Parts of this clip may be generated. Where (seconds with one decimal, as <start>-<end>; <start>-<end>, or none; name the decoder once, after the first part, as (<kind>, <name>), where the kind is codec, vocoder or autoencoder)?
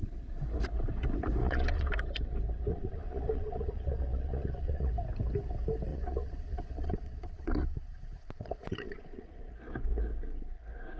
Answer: 1.4-1.9 (vocoder, Vocos); 2.7-4.9; 5.9-9.5